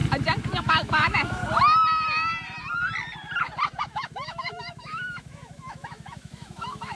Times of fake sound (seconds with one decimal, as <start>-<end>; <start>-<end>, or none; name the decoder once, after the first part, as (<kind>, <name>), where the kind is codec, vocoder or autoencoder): 0.6-1.4 (autoencoder, DAC-VAE); 3.8-7.0